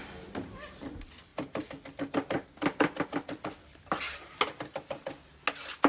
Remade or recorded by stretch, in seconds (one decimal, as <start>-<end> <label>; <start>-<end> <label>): 0.0-5.9 recorded